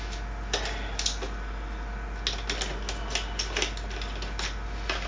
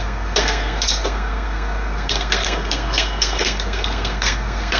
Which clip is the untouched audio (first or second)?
first